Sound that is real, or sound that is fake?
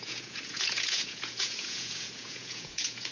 fake